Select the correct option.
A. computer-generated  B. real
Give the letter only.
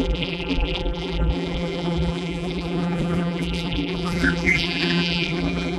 A